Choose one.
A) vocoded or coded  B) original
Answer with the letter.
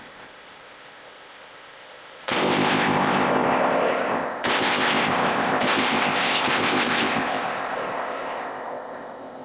A